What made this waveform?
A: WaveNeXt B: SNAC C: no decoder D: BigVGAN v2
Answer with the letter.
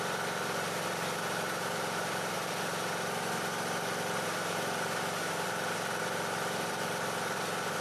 D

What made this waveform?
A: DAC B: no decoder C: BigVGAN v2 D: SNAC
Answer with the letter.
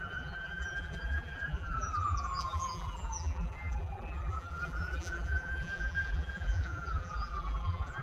C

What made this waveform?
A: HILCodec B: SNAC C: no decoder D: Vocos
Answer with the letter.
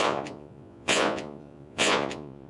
D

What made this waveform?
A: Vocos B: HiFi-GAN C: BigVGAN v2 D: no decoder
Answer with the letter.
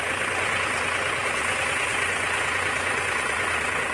A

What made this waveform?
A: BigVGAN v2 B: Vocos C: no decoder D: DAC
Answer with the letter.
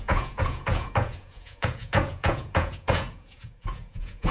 B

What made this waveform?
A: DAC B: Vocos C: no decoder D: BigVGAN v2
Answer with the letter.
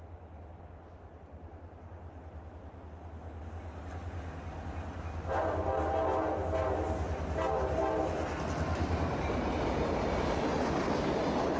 C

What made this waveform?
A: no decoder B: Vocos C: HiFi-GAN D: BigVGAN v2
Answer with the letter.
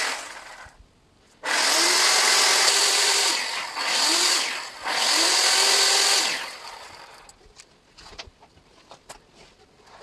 A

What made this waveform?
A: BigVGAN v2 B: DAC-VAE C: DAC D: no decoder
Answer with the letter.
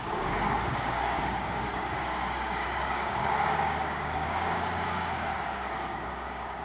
C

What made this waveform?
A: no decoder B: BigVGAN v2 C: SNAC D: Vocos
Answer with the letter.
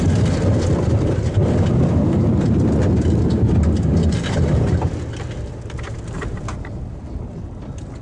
A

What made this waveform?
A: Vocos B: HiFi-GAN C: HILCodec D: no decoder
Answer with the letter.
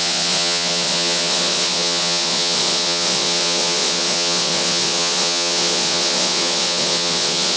A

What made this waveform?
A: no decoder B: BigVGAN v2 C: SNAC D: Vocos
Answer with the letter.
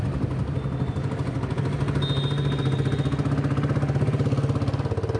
A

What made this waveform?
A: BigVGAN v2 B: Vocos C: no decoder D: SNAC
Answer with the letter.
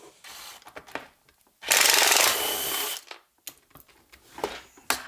C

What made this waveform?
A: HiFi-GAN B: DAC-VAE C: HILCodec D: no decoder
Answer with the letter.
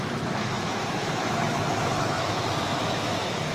B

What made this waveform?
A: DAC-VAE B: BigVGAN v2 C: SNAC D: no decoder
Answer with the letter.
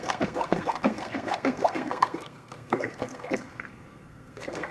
C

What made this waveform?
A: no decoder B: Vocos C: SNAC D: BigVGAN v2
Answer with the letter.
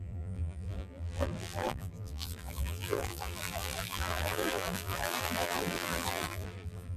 D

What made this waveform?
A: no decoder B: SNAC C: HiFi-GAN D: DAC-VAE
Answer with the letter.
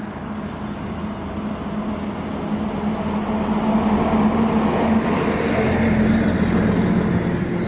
A